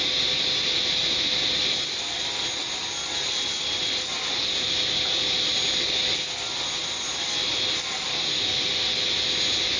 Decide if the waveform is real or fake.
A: real